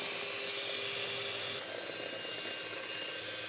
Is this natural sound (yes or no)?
yes